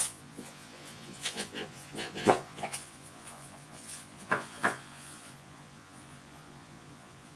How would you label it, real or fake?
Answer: fake